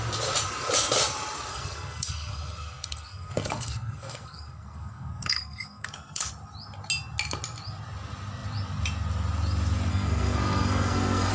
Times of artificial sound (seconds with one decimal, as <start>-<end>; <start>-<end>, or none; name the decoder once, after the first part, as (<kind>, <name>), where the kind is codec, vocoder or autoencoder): 1.5-6.3 (codec, SNAC); 9.9-11.3